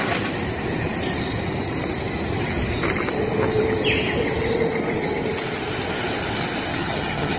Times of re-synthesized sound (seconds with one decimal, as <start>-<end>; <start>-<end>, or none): 6.7-7.4